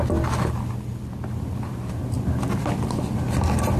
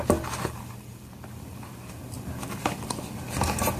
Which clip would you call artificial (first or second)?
second